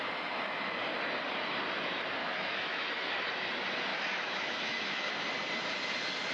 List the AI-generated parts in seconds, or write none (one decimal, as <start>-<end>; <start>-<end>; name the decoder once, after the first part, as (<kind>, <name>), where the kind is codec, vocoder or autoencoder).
2.2-2.9 (autoencoder, DAC-VAE); 3.9-5.1

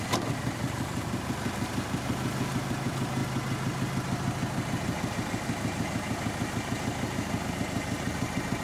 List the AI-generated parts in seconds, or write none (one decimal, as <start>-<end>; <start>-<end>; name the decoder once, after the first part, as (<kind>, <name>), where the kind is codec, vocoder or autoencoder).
none

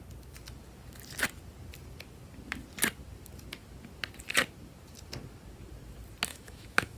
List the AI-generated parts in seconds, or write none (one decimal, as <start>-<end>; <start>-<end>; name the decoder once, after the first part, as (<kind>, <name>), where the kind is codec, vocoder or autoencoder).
6.3-7.0 (autoencoder, DAC-VAE)